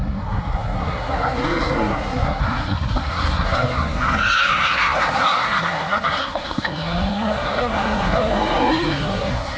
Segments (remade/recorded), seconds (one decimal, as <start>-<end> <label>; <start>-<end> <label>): 0.0-9.6 remade